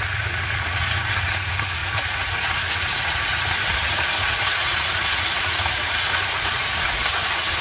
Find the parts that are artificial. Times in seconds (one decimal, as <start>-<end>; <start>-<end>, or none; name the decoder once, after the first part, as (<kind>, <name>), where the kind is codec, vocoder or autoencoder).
0.0-7.6 (vocoder, Vocos)